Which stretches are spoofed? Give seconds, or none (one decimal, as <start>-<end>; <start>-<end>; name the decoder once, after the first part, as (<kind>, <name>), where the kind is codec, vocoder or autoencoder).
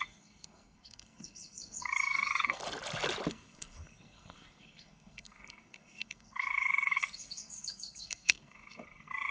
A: 0.0-2.6 (codec, SNAC); 3.3-9.3